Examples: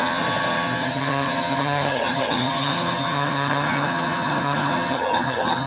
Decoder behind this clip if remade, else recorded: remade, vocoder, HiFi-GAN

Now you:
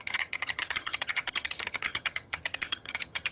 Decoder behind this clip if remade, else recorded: remade, vocoder, HiFi-GAN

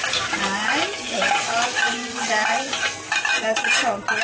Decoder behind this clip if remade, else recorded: recorded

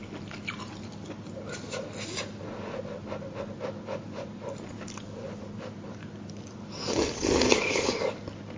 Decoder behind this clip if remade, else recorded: recorded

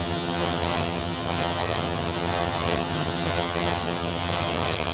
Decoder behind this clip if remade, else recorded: remade, vocoder, HiFi-GAN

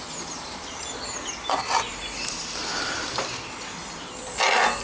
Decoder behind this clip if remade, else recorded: recorded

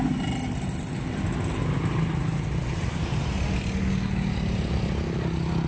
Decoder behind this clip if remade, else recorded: recorded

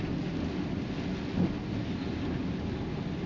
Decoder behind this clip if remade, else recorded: recorded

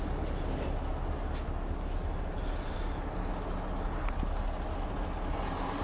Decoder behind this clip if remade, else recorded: recorded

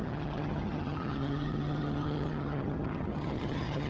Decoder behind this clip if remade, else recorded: remade, vocoder, HiFi-GAN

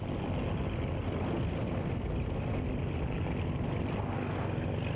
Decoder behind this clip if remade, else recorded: recorded